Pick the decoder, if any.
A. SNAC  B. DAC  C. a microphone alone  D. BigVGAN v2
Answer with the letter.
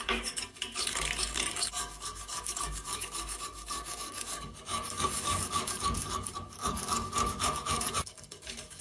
B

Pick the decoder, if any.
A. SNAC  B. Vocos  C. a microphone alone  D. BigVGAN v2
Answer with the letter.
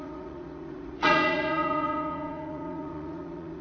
B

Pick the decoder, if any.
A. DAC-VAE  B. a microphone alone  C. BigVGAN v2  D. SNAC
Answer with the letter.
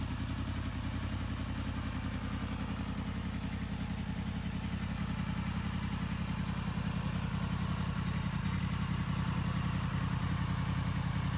B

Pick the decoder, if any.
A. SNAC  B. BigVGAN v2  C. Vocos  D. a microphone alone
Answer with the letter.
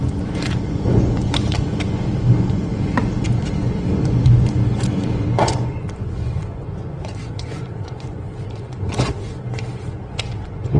C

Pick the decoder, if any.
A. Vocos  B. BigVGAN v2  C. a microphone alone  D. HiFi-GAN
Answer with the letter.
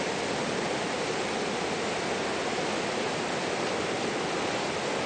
C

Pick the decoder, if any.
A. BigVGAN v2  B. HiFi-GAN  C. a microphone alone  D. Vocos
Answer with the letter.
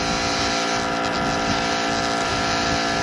C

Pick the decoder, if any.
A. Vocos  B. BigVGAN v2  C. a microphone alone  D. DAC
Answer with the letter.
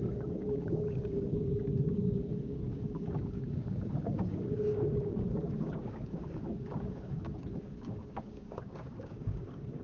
D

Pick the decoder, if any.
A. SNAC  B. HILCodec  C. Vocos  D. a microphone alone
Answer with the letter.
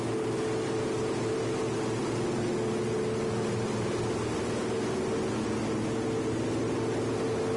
D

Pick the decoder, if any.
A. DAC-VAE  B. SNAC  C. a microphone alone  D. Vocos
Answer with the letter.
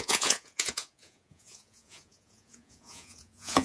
D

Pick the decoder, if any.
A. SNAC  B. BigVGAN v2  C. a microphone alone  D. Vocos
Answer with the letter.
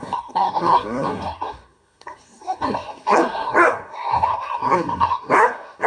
A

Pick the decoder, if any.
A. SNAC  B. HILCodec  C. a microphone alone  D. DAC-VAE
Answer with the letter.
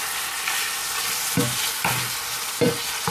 C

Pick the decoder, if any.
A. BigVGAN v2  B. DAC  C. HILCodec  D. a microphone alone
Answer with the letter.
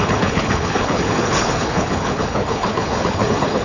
C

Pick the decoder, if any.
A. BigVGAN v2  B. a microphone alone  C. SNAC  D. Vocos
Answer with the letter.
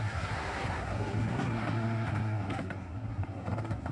C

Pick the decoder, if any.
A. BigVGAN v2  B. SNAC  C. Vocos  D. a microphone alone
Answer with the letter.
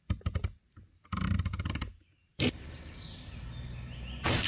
A